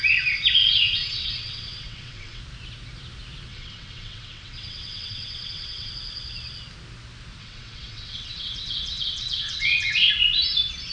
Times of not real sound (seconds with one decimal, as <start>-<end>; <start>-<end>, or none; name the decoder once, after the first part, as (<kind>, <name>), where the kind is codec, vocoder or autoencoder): 0.6-2.4 (vocoder, WaveNeXt); 3.5-5.9; 7.4-10.1